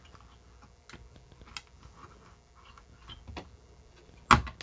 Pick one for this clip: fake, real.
real